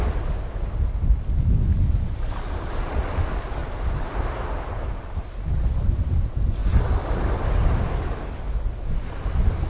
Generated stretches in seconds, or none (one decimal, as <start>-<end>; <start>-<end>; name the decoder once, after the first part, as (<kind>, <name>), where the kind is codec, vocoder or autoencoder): none